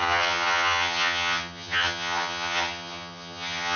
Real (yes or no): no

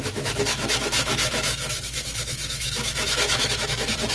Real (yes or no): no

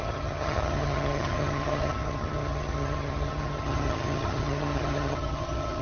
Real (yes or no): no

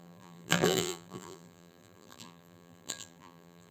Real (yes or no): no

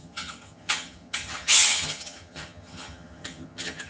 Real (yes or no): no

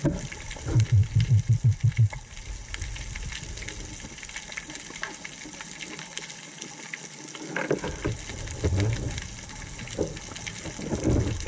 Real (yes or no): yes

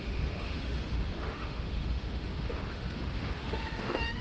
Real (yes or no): no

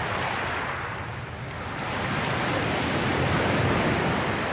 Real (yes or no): yes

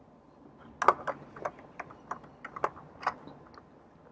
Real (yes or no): yes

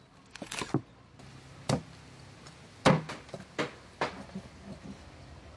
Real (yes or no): yes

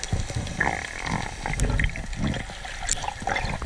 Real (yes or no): yes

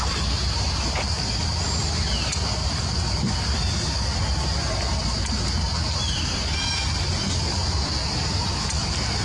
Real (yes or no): yes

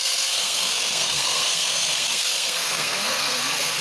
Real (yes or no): no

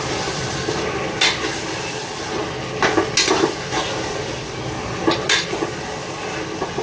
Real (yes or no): yes